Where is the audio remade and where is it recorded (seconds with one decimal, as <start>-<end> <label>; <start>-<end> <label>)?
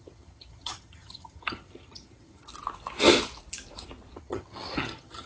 0.0-2.5 remade; 2.5-4.2 recorded; 4.2-5.3 remade